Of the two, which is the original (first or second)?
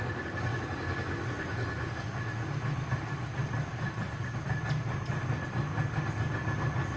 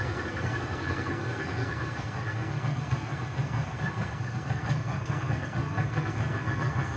first